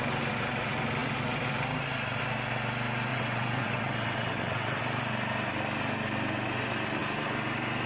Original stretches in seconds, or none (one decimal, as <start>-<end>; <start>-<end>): 0.0-3.1; 4.8-7.9